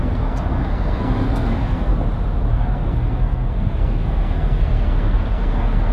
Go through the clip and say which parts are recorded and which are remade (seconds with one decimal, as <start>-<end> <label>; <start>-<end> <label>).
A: 0.0-1.9 remade; 1.9-2.5 recorded; 2.5-5.9 remade